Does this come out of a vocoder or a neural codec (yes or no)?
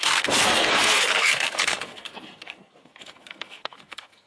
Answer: yes